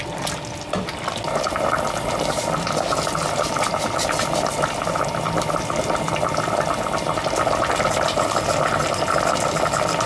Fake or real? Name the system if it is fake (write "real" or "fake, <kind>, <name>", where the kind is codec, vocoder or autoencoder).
real